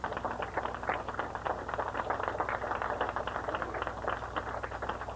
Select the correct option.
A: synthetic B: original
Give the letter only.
B